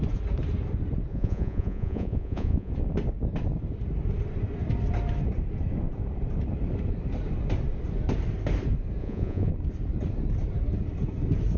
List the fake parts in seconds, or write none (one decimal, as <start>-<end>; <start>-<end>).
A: 1.1-2.7; 9.0-9.5

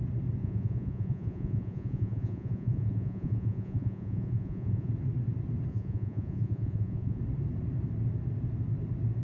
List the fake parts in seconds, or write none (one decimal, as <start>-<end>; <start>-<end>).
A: 0.4-4.9; 5.7-7.2

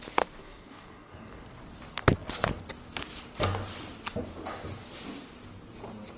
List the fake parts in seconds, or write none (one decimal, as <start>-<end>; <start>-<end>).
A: 0.4-1.4

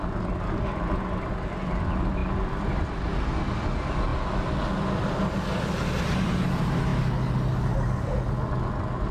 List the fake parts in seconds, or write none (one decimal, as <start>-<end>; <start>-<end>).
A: none